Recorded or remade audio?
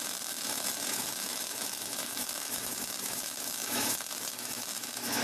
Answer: remade